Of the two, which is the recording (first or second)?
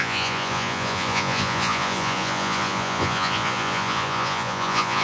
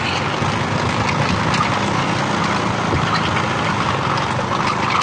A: second